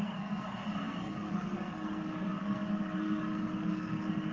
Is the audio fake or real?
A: fake